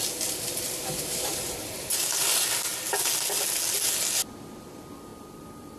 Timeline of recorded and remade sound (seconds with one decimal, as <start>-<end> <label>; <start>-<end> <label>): 0.0-2.7 remade; 2.7-4.2 recorded; 4.2-5.8 remade

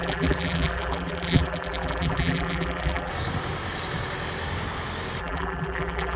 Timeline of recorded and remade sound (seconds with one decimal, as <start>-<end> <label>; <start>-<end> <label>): 0.0-3.1 remade; 3.1-5.2 recorded; 5.2-6.2 remade